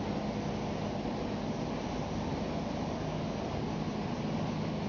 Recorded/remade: recorded